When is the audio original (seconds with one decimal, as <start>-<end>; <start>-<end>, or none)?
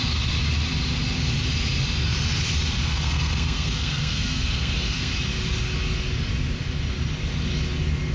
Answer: 0.0-2.8; 5.1-8.1